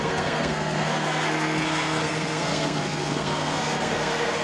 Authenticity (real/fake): fake